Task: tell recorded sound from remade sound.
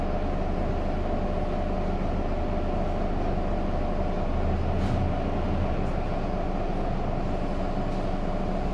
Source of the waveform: recorded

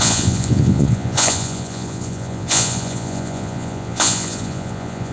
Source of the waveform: remade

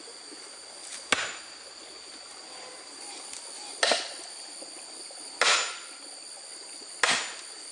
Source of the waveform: recorded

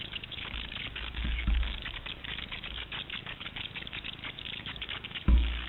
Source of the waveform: remade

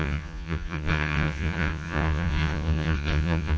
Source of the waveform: remade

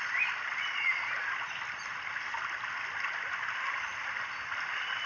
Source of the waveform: recorded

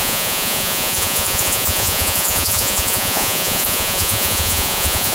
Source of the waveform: remade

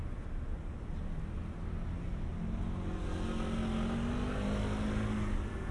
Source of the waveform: recorded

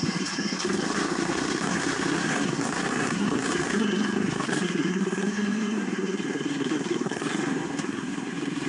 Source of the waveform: remade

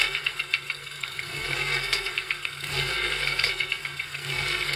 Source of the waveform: remade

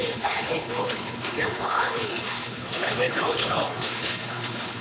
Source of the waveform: remade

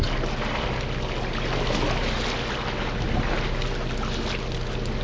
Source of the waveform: recorded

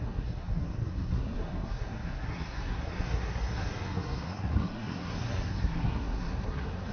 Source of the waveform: remade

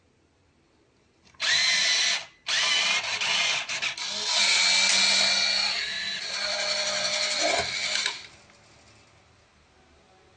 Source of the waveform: recorded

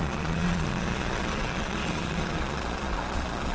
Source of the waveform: remade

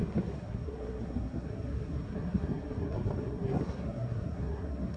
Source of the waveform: remade